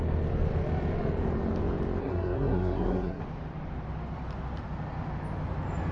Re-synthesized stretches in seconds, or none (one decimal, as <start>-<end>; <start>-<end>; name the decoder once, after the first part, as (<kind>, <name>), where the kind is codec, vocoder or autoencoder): 2.0-3.2 (codec, SNAC)